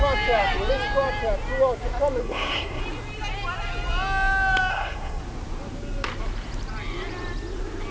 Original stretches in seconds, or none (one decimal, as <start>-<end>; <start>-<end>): 0.0-2.2; 2.8-4.7; 5.2-7.9

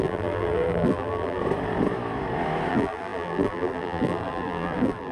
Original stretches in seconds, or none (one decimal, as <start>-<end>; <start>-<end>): 1.4-2.7

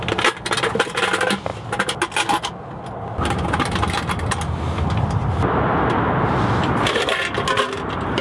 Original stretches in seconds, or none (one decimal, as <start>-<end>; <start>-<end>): 0.0-8.2

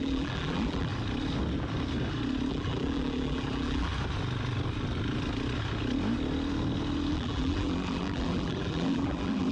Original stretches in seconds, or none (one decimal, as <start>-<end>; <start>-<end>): 0.9-2.5; 3.9-7.1